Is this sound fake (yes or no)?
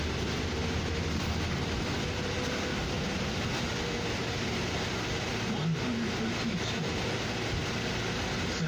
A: no